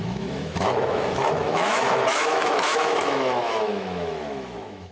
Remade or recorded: remade